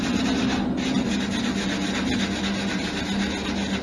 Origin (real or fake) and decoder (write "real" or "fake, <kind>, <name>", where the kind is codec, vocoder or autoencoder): real